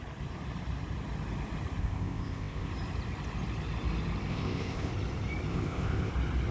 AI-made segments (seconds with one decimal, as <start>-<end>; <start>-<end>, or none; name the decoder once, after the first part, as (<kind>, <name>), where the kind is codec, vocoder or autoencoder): 1.8-2.7 (codec, ZipCodec); 4.3-4.9; 5.5-6.1

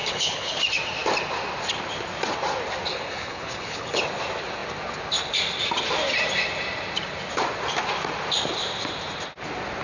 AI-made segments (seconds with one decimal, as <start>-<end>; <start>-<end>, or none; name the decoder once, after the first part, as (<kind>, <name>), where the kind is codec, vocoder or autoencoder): 0.0-0.6 (codec, HILCodec); 2.9-4.0

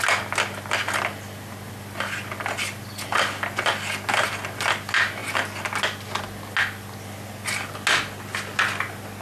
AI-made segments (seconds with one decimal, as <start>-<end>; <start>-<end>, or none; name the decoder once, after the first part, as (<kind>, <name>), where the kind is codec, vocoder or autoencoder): none

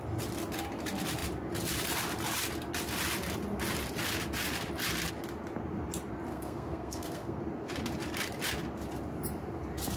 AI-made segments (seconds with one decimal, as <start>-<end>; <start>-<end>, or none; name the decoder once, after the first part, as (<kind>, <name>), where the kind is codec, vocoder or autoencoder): 6.3-7.4 (codec, SNAC)

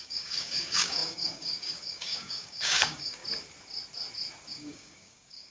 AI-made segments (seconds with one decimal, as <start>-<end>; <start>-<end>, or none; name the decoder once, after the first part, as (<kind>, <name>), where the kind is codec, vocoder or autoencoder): 0.0-3.2 (codec, DAC); 4.5-5.5

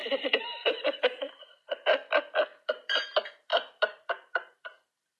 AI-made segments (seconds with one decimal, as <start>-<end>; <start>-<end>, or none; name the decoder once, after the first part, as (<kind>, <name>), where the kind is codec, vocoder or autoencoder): 0.0-1.3 (vocoder, BigVGAN v2); 2.5-3.1

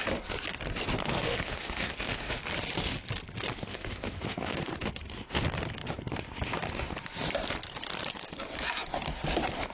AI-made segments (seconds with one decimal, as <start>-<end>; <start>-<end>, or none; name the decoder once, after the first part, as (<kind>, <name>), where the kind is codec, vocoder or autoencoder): 1.1-2.4 (autoencoder, DAC-VAE); 3.7-4.9